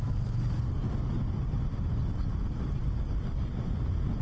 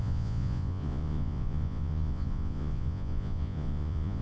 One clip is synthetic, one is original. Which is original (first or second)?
first